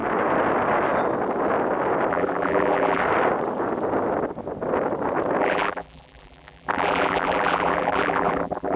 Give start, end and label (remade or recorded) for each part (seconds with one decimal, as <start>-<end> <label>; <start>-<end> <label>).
0.0-2.1 recorded; 2.1-3.0 remade; 3.0-5.4 recorded; 5.4-8.8 remade